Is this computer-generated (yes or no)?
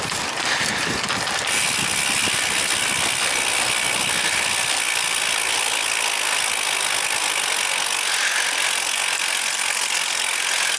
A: no